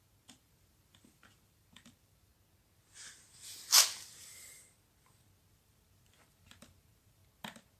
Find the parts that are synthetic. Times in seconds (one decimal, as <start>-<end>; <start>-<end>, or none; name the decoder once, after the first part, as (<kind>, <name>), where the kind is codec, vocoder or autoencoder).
0.0-2.3 (vocoder, BigVGAN v2); 5.5-7.2